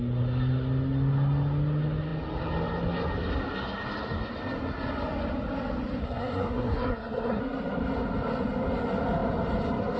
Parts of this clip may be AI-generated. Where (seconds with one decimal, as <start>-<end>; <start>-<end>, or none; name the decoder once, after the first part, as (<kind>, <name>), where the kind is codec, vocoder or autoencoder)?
6.0-7.4 (codec, SNAC)